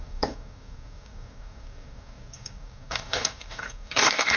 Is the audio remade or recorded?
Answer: remade